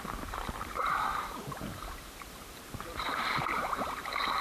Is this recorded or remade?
remade